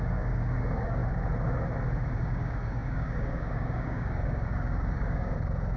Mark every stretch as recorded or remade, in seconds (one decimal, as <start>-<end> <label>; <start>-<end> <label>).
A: 0.0-1.0 remade; 1.0-2.2 recorded; 2.2-5.8 remade